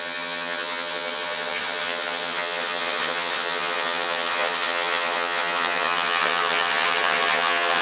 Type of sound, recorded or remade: remade